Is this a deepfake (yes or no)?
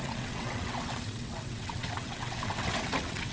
yes